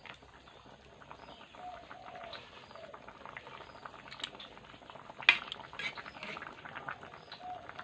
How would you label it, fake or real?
real